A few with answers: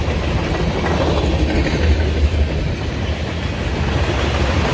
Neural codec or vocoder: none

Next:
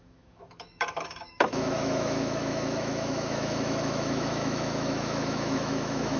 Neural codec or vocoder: autoencoder, DAC-VAE